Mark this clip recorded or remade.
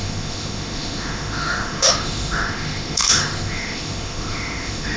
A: remade